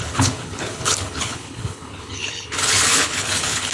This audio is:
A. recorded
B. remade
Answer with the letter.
B